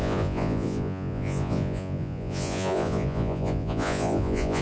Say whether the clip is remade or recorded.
remade